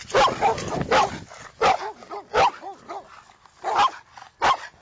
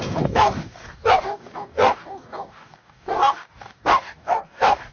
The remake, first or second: second